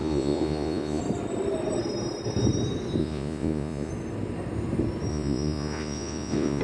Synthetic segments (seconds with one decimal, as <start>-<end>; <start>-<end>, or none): 0.0-1.0; 3.0-3.9; 5.1-6.6